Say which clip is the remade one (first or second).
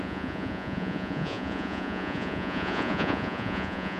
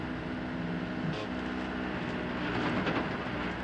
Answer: first